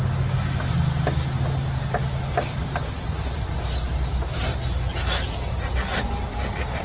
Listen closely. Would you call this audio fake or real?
real